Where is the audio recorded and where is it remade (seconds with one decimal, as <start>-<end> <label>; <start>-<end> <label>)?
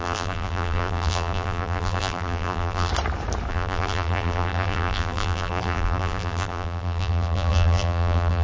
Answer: 0.0-2.9 remade; 2.9-3.5 recorded; 3.5-8.4 remade